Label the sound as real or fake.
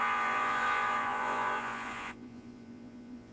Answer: fake